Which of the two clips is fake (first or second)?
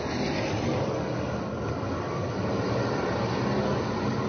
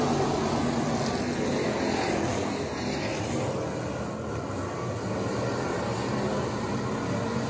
first